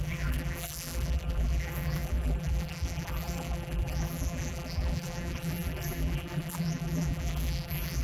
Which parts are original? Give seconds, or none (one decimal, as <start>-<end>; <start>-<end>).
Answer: none